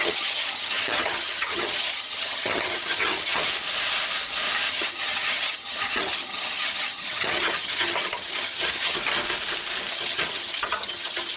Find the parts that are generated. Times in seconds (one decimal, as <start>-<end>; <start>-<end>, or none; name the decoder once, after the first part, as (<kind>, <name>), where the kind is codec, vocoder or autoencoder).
0.0-3.4 (vocoder, HiFi-GAN); 4.7-9.0; 9.9-11.4